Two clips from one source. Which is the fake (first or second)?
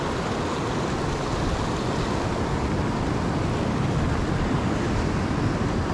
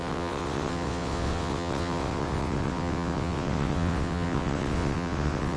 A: second